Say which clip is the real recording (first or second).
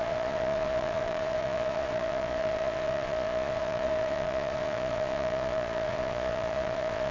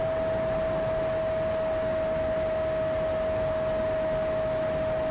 second